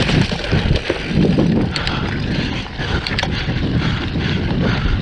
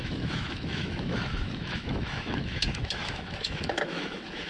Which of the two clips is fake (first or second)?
second